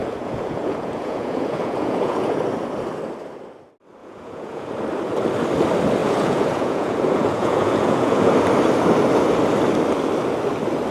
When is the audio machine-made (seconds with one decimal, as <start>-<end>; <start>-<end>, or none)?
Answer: 0.0-2.4; 4.0-4.7; 6.0-8.3